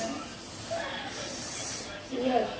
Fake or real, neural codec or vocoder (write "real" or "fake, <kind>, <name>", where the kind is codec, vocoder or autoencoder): real